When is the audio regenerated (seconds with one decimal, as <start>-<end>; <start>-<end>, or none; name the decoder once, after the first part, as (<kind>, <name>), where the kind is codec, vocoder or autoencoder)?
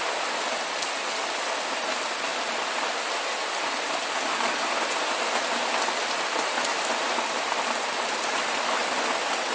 none